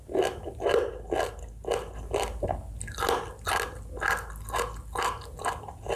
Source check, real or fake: real